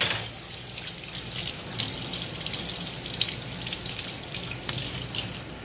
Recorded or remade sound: recorded